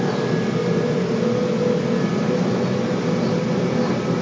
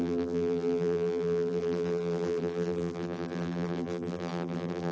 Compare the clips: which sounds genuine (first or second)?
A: first